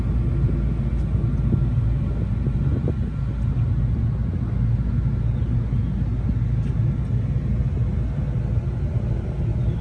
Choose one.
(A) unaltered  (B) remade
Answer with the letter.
A